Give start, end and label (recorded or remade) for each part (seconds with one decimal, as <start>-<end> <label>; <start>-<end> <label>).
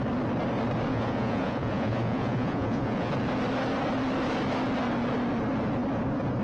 0.0-0.9 recorded; 0.9-3.1 remade; 3.1-6.4 recorded